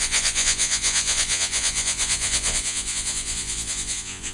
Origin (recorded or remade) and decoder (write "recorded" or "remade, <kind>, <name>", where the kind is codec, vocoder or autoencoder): remade, vocoder, Vocos